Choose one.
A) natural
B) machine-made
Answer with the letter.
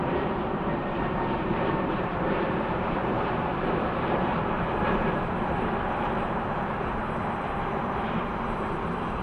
B